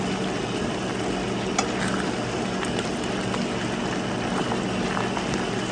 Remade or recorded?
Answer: recorded